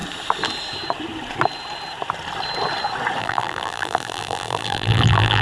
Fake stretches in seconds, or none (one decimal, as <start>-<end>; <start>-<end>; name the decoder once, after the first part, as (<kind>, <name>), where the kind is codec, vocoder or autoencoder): 3.2-5.4 (vocoder, BigVGAN v2)